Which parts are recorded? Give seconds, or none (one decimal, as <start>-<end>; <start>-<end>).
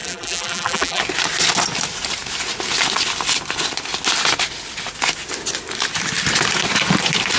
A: 1.0-7.4